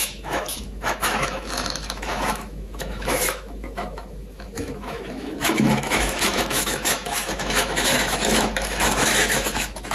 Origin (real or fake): fake